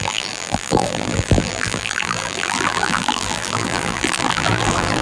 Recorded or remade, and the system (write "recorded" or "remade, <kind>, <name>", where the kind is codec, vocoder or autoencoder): remade, vocoder, BigVGAN v2